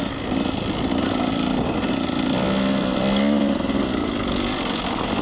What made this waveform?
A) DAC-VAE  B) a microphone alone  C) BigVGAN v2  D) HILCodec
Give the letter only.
B